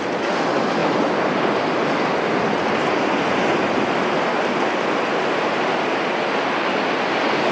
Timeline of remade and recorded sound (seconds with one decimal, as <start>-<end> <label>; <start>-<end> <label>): 0.0-7.5 recorded